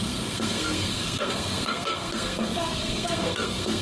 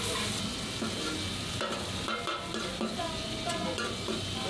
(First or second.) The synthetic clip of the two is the first